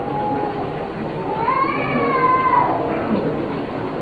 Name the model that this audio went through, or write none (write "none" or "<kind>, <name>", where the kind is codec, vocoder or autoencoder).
none